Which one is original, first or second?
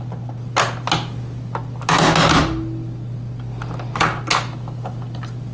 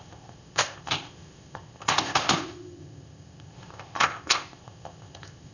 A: first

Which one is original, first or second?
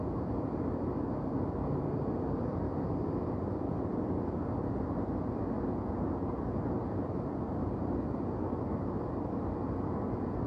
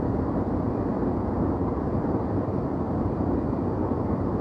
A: first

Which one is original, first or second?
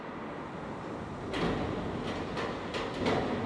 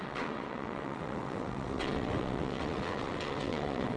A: first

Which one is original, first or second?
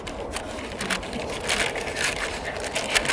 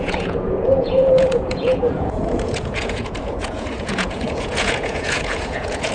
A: first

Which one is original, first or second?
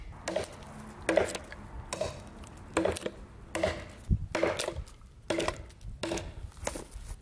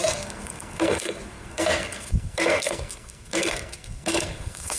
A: first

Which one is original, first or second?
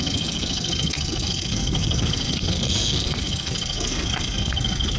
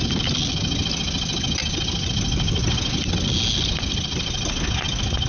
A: second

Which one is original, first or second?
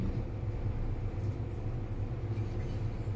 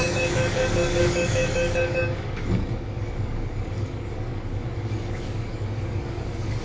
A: first